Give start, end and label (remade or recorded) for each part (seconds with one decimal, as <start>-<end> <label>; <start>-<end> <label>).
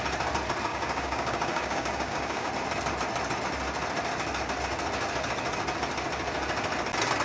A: 0.0-0.7 recorded; 0.7-2.5 remade; 2.5-7.2 recorded